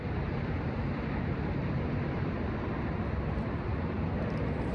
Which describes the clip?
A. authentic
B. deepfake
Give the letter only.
B